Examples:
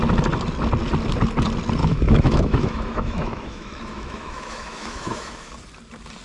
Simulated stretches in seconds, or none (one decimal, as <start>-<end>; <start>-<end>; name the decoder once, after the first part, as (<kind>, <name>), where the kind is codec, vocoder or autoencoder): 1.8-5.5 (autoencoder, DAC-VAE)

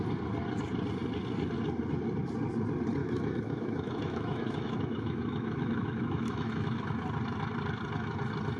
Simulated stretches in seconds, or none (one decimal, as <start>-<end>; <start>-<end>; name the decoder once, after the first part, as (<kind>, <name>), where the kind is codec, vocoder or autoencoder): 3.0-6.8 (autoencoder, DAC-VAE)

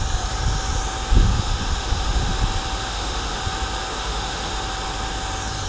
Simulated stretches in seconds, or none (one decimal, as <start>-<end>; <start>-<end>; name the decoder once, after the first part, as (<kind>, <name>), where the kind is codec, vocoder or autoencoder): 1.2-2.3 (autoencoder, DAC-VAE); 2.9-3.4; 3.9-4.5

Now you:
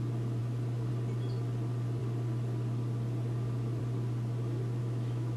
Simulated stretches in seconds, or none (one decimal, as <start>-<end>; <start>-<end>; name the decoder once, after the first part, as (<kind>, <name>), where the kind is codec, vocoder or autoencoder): 4.8-5.4 (autoencoder, DAC-VAE)